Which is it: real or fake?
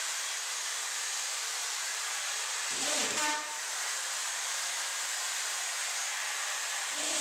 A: fake